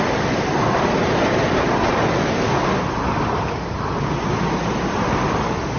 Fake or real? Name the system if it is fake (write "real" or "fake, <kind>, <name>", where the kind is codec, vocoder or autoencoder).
real